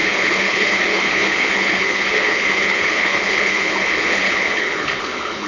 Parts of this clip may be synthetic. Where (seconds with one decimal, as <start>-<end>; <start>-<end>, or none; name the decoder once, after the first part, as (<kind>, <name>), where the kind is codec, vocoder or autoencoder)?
0.0-5.5 (codec, HILCodec)